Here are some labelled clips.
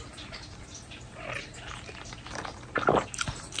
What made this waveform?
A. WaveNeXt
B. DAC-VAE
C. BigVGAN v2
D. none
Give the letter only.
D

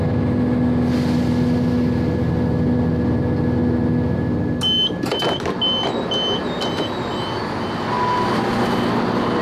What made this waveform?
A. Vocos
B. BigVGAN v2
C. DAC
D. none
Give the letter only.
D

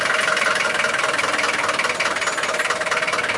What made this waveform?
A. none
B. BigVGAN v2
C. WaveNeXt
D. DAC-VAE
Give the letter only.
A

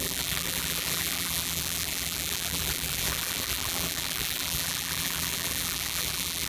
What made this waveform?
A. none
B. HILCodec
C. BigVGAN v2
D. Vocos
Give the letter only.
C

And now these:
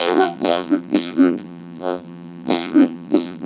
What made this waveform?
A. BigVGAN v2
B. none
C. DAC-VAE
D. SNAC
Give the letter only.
A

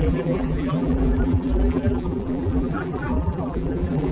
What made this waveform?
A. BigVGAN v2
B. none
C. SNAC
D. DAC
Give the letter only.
A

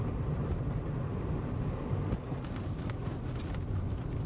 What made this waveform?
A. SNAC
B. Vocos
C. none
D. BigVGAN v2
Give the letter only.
C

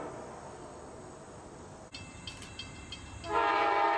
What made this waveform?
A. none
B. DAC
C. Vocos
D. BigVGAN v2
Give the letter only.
A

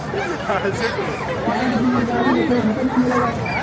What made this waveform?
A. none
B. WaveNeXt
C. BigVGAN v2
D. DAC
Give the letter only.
C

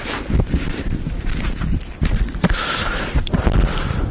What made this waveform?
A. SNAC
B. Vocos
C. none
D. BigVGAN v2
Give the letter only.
D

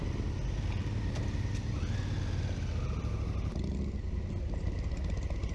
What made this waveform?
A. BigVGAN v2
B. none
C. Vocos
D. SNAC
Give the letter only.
B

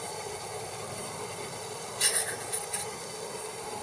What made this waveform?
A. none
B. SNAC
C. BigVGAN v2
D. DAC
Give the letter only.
A